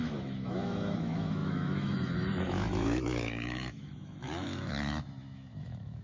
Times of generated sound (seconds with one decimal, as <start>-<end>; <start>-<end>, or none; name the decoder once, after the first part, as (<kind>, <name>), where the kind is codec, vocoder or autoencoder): 0.0-6.0 (autoencoder, DAC-VAE)